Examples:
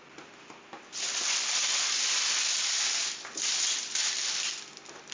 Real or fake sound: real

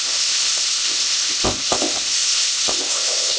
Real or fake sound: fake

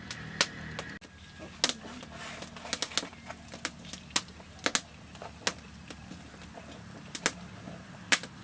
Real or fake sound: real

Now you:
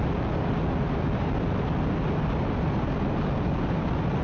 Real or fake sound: real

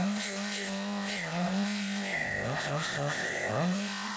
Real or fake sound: fake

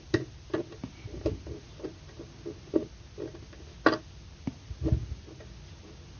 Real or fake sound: real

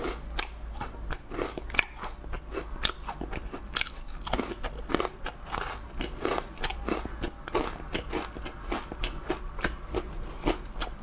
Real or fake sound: real